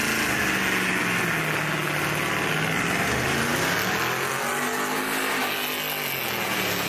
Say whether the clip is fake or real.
real